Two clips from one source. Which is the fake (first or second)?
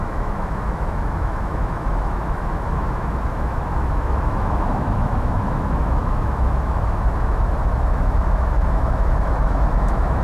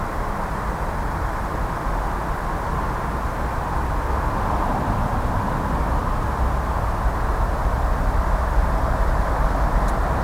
first